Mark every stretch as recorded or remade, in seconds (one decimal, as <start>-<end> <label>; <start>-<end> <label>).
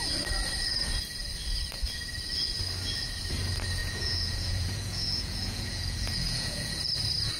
0.0-3.8 recorded; 3.8-6.9 remade; 6.9-7.4 recorded